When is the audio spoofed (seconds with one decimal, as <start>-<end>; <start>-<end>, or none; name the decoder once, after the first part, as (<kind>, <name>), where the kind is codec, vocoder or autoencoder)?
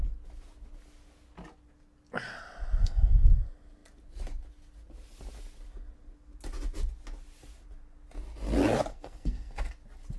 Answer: 2.8-3.3 (codec, SNAC); 8.9-9.7